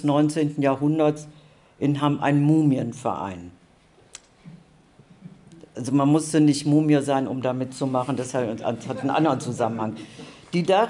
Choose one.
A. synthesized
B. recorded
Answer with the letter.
B